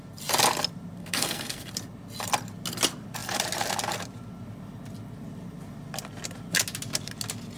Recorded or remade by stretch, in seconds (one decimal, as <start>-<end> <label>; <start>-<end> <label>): 0.0-1.0 recorded; 1.0-1.7 remade; 1.7-7.6 recorded